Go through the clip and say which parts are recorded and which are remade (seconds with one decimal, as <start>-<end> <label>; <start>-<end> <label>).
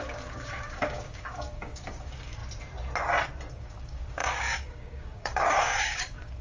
0.0-2.4 remade; 2.4-3.5 recorded; 3.5-6.4 remade